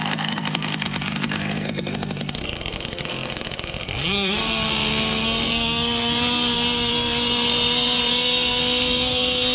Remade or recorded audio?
remade